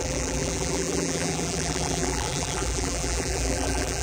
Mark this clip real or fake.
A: fake